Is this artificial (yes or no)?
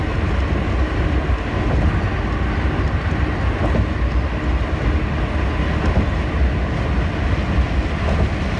no